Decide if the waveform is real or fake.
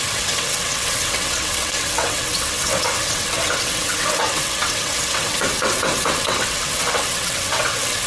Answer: fake